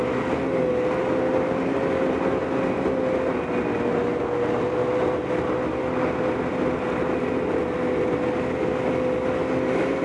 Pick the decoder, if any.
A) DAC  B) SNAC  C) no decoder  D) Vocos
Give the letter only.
C